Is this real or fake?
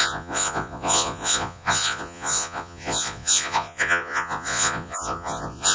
fake